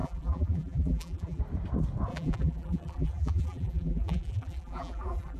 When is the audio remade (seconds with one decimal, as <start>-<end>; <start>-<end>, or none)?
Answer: 0.0-1.4; 2.1-5.4